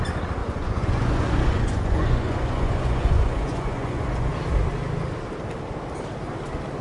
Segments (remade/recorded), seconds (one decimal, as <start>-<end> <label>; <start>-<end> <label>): 0.0-0.4 recorded; 0.4-4.3 remade; 4.3-6.8 recorded